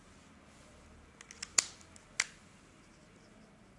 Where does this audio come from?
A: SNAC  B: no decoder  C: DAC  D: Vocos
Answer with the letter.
B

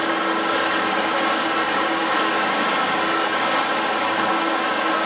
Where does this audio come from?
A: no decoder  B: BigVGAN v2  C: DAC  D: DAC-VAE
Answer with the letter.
C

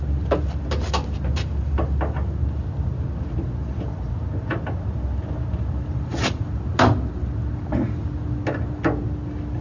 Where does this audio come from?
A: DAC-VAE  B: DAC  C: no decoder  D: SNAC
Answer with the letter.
C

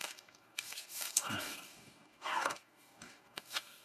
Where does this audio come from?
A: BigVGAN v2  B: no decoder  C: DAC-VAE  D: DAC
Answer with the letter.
D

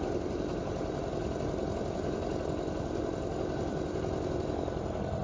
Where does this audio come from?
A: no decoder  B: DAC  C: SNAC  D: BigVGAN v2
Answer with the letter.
A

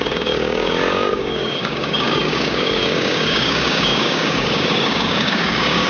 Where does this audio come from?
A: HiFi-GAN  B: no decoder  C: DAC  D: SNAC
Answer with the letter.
C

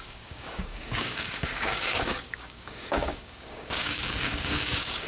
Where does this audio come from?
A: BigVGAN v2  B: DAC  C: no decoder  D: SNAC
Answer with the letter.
B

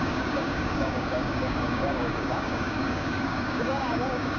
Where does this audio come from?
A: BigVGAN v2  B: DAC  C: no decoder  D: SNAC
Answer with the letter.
B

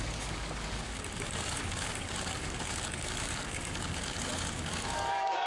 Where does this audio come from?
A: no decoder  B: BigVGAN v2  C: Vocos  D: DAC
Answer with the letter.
D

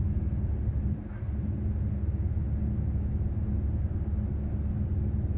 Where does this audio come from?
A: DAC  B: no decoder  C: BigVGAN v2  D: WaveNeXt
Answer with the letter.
B